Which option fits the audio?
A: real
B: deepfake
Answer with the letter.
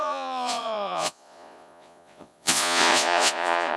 B